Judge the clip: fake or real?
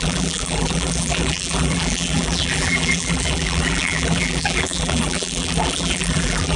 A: fake